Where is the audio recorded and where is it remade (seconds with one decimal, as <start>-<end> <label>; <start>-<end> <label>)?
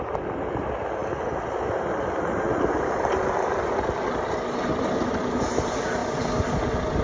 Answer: 0.0-7.0 recorded